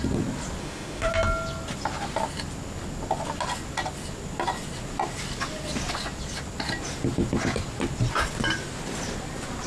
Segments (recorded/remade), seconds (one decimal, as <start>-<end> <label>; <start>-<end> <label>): 0.0-0.6 recorded; 0.6-1.1 remade; 1.1-9.7 recorded